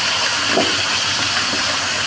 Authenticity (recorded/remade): recorded